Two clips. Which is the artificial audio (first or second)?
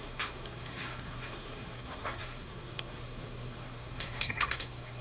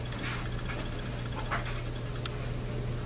first